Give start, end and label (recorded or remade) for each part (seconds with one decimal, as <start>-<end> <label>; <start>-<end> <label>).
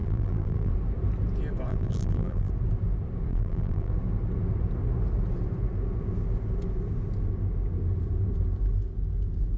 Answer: 0.0-0.7 remade; 0.7-1.7 recorded; 1.7-2.5 remade; 2.5-3.3 recorded; 3.3-3.9 remade; 3.9-9.6 recorded